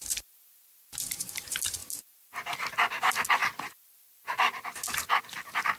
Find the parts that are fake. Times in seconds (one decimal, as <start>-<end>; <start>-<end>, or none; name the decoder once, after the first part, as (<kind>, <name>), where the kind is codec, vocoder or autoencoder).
none